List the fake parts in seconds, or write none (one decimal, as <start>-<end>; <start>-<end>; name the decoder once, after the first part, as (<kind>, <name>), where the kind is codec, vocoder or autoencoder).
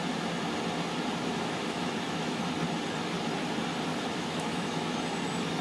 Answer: 1.3-2.4 (autoencoder, DAC-VAE); 3.9-4.8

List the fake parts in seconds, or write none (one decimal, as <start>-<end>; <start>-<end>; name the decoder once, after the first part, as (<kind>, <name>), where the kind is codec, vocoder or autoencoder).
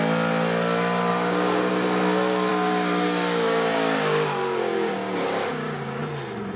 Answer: 1.1-1.7 (codec, DAC); 2.5-6.0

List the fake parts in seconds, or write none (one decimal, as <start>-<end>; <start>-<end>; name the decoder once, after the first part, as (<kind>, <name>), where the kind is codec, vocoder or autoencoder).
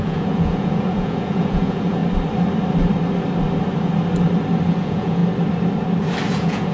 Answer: 0.0-2.0 (vocoder, Vocos); 4.7-5.2; 6.3-6.7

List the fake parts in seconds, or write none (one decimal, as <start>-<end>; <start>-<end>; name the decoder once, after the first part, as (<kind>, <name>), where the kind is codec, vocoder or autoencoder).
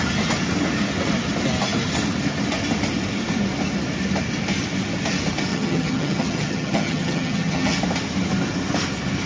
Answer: 5.5-7.8 (vocoder, HiFi-GAN)